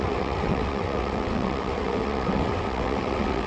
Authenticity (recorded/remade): remade